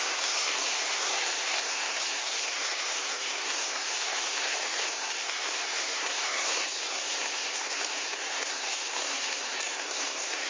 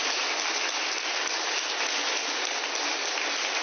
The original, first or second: second